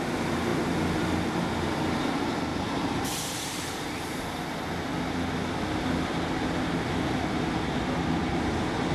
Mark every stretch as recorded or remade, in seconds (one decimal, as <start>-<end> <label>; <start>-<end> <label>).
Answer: 0.0-2.5 recorded; 2.5-4.2 remade; 4.2-8.9 recorded